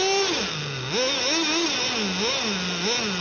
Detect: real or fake real